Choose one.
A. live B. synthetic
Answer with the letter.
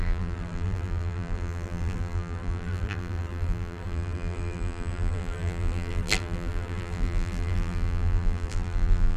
B